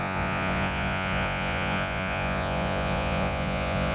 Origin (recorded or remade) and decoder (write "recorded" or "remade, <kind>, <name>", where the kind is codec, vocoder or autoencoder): remade, vocoder, Vocos